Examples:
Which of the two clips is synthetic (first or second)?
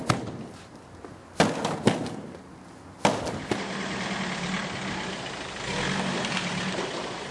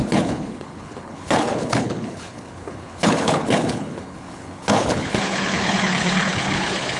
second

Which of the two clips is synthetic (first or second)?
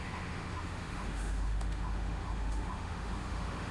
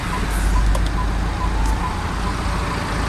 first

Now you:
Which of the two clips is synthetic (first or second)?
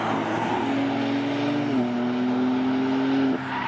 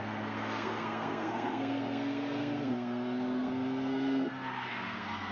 second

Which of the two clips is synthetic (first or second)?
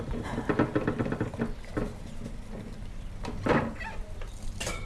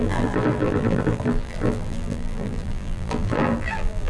second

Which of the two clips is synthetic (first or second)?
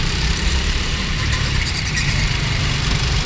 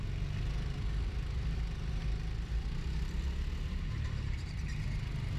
first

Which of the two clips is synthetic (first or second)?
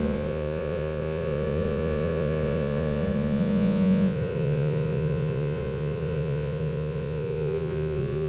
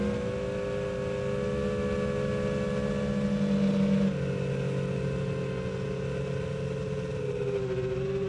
first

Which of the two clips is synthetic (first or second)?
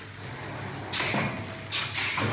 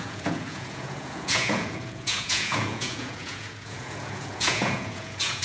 second